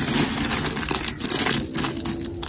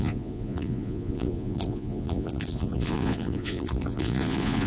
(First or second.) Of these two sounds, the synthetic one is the second